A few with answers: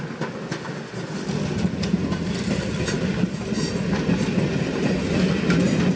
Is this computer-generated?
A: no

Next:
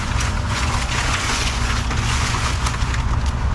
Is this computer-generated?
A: yes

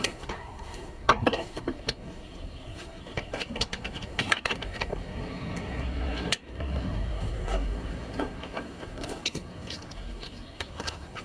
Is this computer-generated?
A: yes